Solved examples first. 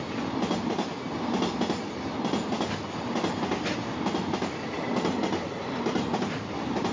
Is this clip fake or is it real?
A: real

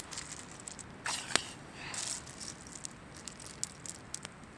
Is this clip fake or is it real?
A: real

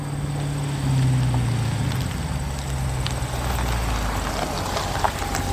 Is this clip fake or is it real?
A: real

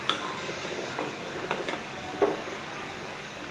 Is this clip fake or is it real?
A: fake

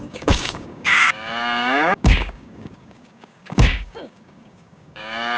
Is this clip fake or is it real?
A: fake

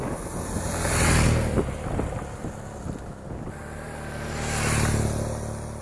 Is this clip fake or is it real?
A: real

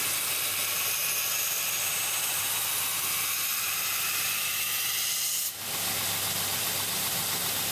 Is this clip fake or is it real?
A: real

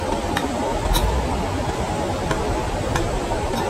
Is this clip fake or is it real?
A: real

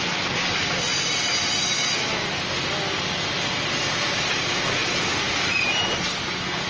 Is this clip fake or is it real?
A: real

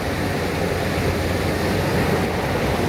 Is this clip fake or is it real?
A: real